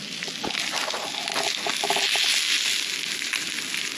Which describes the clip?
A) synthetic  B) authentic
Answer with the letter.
B